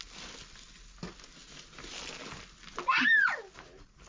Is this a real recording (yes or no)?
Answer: yes